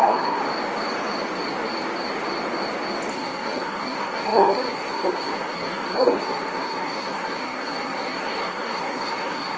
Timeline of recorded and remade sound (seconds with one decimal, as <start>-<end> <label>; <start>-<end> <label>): 0.0-0.4 remade; 0.4-3.1 recorded; 3.1-9.6 remade